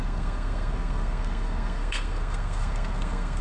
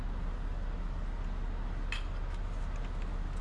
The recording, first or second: second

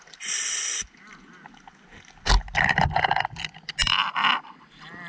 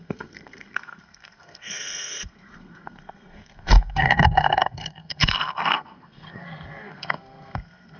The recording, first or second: first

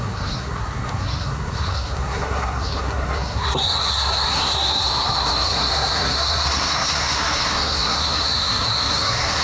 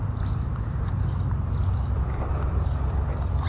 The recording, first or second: second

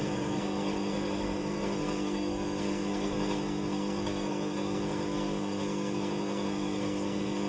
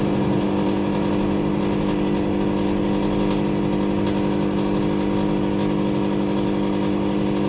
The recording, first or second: second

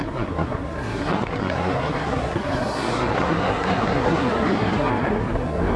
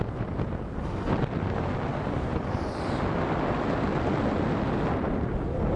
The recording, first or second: second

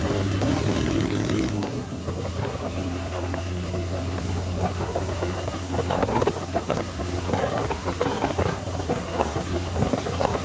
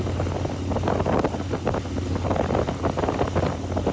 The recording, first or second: second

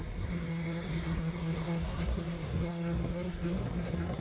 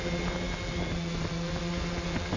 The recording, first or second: second